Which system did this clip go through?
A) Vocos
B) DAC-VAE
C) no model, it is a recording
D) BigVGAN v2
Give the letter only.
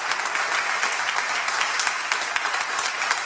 C